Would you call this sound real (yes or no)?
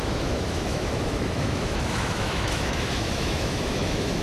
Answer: no